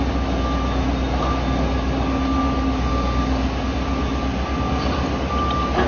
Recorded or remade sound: recorded